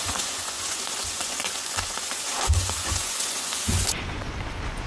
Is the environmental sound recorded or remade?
remade